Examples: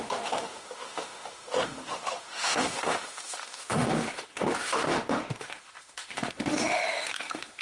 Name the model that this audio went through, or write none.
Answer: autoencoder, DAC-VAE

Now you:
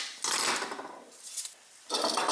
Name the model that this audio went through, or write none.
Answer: none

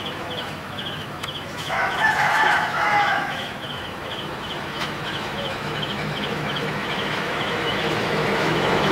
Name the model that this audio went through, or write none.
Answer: autoencoder, DAC-VAE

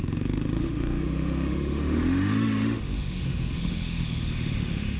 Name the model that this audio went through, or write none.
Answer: autoencoder, DAC-VAE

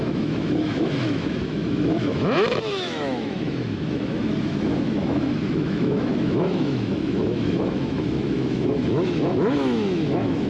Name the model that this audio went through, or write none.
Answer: autoencoder, DAC-VAE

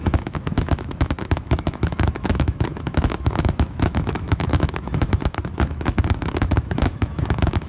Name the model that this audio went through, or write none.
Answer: autoencoder, DAC-VAE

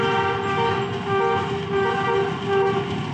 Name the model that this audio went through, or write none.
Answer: none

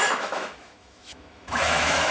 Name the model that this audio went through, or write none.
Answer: autoencoder, DAC-VAE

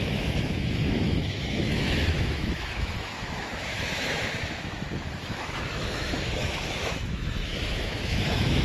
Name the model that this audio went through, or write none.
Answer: autoencoder, DAC-VAE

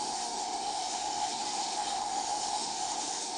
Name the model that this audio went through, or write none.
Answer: autoencoder, DAC-VAE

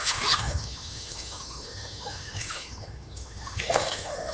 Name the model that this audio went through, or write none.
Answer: autoencoder, DAC-VAE